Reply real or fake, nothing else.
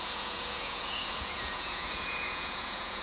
fake